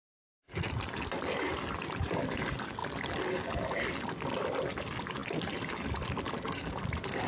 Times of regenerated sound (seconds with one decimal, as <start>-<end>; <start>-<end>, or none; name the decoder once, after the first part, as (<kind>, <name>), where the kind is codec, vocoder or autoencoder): 0.0-7.3 (vocoder, BigVGAN v2)